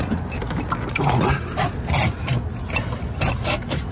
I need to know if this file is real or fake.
real